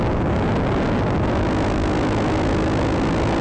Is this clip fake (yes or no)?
no